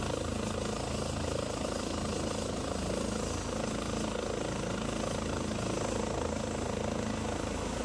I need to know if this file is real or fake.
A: real